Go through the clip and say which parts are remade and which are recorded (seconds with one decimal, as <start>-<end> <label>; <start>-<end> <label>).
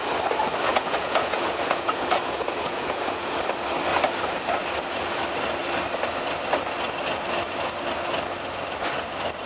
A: 0.0-0.7 recorded; 0.7-3.4 remade; 3.4-9.5 recorded